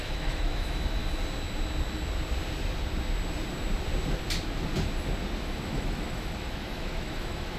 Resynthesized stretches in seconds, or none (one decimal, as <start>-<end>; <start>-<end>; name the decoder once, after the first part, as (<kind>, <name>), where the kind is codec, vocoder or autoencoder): 0.0-1.0 (autoencoder, DAC-VAE); 5.4-7.6